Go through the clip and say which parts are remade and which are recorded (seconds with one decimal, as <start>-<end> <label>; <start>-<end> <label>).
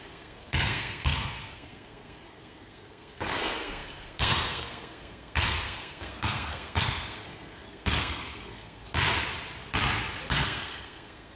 0.0-8.8 remade; 8.8-10.3 recorded; 10.3-11.3 remade